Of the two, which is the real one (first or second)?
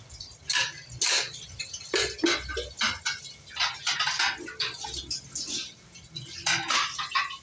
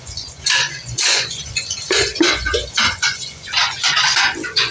first